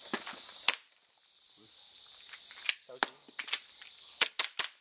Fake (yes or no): no